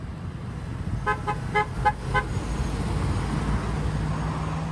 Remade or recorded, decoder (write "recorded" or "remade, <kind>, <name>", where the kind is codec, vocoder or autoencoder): recorded